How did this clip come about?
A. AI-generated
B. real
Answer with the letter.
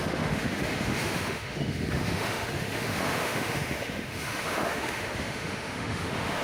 A